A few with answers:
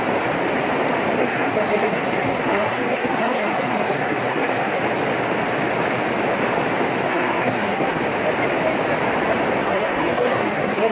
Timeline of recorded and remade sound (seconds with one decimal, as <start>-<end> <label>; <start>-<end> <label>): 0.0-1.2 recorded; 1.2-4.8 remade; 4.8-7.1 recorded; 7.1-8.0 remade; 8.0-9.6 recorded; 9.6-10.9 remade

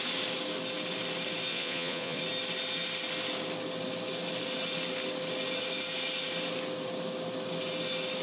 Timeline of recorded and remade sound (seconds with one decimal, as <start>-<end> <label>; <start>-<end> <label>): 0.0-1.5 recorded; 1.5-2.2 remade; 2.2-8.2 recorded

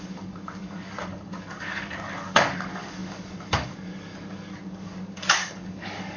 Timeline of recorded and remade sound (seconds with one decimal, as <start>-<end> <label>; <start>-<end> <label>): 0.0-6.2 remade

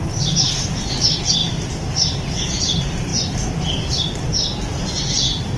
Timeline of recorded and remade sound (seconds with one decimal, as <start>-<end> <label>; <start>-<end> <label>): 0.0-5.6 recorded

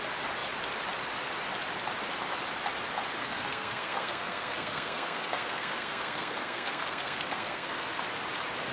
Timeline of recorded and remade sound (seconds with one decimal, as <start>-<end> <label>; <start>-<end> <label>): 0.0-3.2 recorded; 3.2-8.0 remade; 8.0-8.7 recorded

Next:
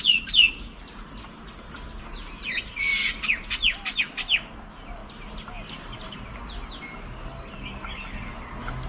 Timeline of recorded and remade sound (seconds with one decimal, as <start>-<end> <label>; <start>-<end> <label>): 0.0-8.9 recorded

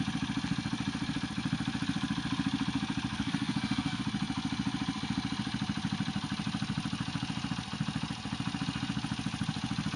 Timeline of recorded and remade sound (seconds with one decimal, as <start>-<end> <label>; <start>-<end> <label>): 0.0-3.1 recorded; 3.1-4.0 remade; 4.0-10.0 recorded

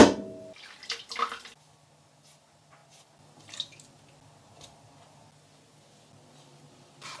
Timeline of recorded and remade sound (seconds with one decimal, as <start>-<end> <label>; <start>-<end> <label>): 0.0-7.2 recorded